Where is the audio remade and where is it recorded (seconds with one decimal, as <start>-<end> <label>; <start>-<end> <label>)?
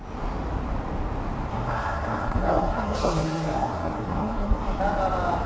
0.0-1.5 recorded; 1.5-4.8 remade; 4.8-5.5 recorded